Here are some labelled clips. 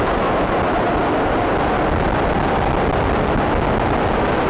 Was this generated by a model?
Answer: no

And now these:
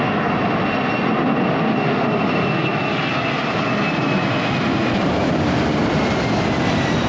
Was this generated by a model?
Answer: no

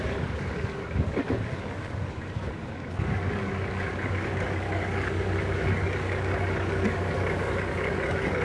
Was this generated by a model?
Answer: yes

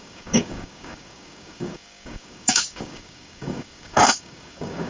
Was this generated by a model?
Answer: yes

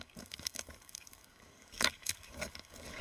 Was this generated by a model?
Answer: yes